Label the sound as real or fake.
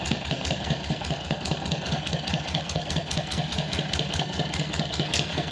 fake